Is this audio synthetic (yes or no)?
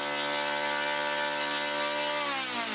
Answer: no